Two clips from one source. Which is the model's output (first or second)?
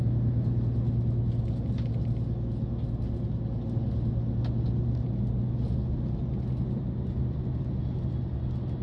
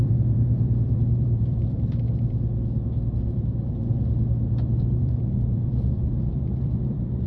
second